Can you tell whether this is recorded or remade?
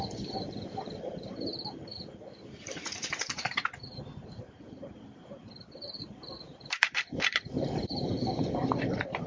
remade